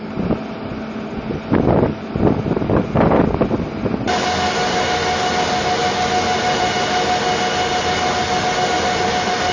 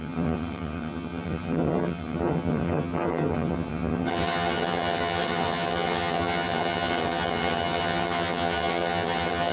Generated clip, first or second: second